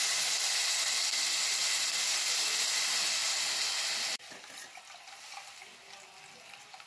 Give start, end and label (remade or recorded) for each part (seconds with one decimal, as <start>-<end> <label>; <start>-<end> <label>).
0.0-6.9 recorded